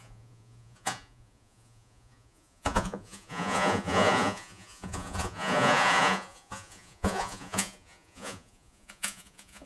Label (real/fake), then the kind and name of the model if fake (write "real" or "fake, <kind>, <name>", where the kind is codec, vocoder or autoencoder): fake, vocoder, Vocos